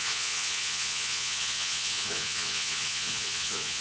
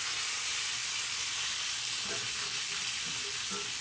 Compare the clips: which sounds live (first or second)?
second